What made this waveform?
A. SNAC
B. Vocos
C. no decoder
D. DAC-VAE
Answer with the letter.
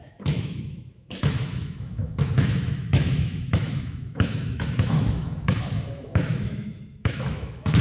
D